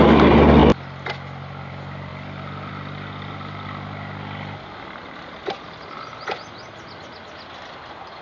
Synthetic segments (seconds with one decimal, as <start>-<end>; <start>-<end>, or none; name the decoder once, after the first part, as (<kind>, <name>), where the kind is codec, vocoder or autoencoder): none

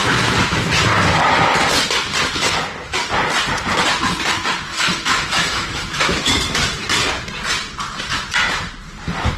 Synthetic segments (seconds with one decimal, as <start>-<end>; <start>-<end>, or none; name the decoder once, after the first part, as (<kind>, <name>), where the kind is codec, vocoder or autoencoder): 4.7-6.3 (autoencoder, DAC-VAE)

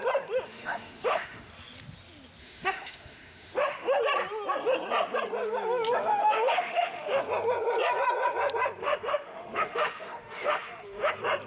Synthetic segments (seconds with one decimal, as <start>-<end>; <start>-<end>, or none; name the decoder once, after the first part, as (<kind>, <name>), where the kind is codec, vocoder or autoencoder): 0.5-1.5 (autoencoder, DAC-VAE); 2.4-4.0; 6.2-7.2; 8.8-11.1

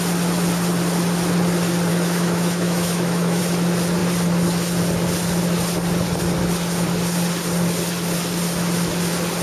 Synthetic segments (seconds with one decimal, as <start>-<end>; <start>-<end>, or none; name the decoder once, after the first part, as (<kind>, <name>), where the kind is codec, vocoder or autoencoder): 1.9-3.4 (autoencoder, DAC-VAE)

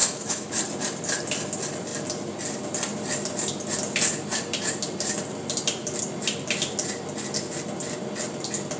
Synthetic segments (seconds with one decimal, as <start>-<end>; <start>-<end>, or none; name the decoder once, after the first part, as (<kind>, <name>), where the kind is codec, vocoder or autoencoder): 0.0-0.5 (autoencoder, DAC-VAE)

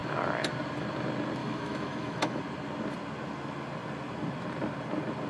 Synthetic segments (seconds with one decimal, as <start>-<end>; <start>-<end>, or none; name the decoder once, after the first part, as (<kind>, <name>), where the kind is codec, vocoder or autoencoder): 1.4-2.4 (autoencoder, DAC-VAE)